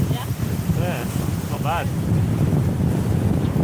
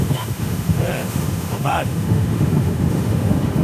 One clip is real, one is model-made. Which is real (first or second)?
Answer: first